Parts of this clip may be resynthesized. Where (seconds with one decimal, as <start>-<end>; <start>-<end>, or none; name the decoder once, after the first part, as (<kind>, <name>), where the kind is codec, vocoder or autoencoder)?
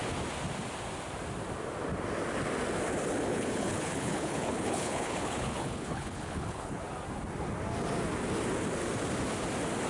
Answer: 3.3-6.8 (codec, HILCodec)